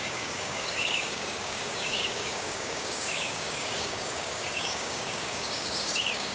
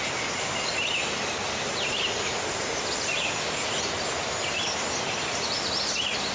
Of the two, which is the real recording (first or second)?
second